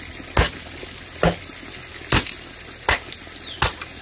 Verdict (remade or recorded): recorded